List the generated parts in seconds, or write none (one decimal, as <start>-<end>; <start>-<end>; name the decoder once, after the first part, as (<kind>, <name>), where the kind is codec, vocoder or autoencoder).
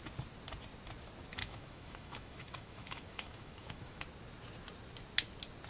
1.4-4.0 (autoencoder, DAC-VAE)